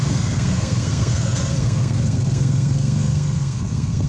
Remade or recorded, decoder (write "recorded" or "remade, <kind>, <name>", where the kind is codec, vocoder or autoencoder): remade, codec, SNAC